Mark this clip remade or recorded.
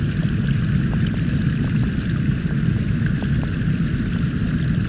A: recorded